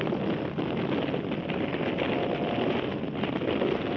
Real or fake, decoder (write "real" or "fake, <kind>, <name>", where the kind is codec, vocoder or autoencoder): real